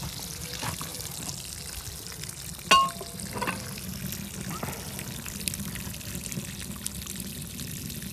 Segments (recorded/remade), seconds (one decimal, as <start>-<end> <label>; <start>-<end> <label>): 0.0-8.1 recorded